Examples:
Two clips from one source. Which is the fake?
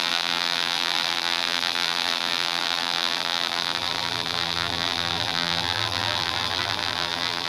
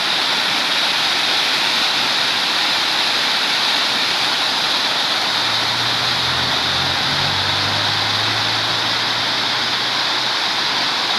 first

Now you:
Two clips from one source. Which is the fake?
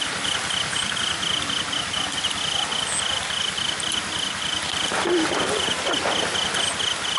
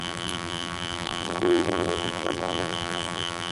second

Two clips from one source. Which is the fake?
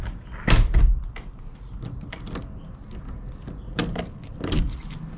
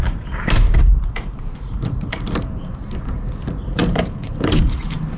second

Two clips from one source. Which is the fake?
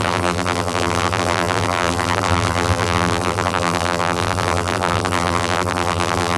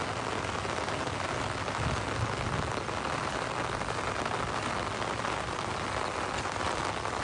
first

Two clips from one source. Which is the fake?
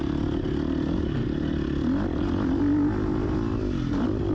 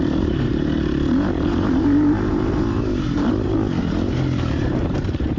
second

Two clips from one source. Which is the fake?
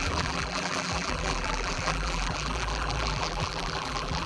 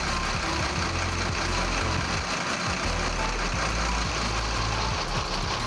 first